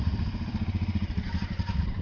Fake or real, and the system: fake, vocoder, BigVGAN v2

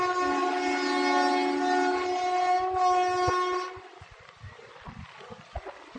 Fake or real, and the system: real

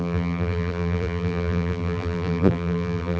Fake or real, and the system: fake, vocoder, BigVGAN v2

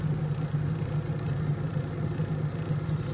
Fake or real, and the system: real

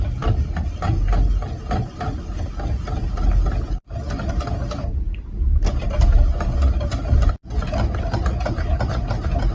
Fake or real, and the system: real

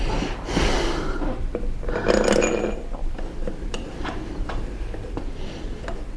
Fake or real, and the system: real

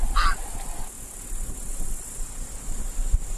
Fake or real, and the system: real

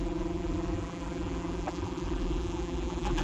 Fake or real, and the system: fake, vocoder, BigVGAN v2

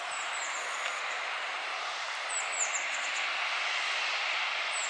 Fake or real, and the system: real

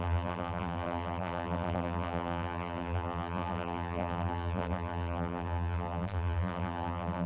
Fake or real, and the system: fake, vocoder, BigVGAN v2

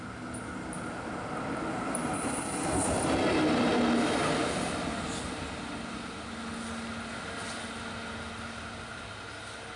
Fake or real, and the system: real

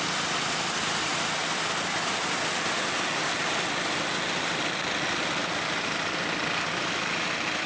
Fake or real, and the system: real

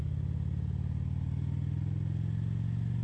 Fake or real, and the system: real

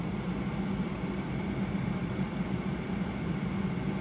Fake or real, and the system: fake, vocoder, BigVGAN v2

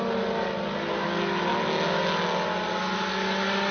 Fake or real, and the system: real